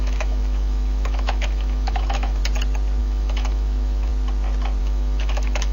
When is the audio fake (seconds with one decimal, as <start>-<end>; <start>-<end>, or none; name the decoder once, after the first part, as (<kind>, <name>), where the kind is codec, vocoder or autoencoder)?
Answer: 0.0-2.4 (autoencoder, DAC-VAE); 3.0-4.1; 4.8-5.7